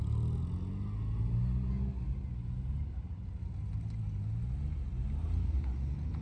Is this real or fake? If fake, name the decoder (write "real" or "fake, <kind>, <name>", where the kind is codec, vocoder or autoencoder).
real